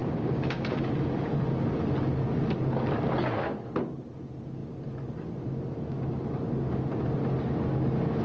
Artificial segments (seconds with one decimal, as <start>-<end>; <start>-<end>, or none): 0.0-0.8